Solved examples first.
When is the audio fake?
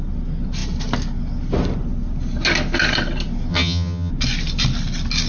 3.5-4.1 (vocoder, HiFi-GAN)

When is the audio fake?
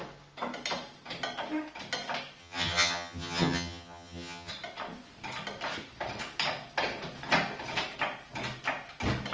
2.4-4.5 (vocoder, HiFi-GAN)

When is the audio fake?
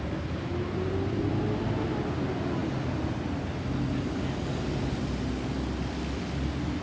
none